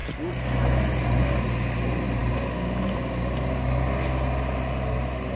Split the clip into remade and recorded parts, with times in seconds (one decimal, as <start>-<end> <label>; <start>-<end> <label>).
0.0-5.4 recorded